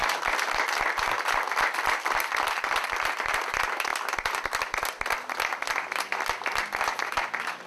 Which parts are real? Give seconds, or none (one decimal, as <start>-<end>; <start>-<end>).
3.5-7.7